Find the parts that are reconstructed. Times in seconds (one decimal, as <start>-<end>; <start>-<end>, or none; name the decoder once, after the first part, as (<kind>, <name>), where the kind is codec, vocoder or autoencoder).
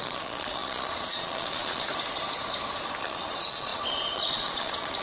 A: 0.0-1.9 (vocoder, Vocos); 3.0-5.0